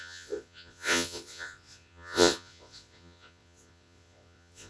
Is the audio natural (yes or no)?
no